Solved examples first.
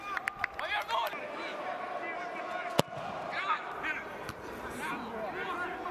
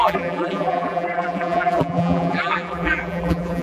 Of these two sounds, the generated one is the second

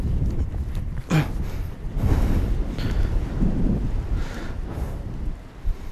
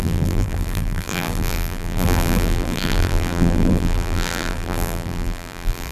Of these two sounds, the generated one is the second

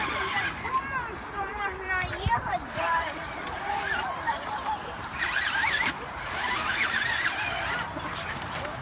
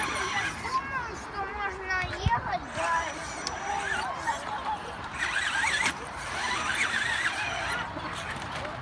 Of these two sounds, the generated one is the first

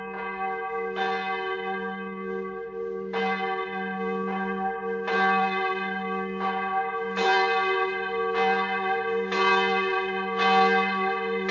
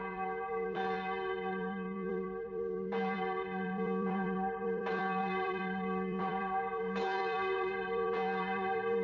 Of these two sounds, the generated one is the second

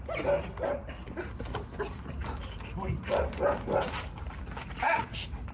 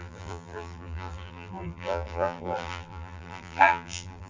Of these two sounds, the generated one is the second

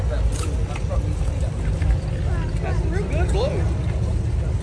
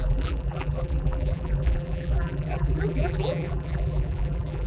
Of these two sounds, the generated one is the second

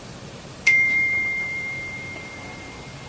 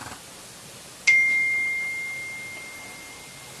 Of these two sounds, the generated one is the first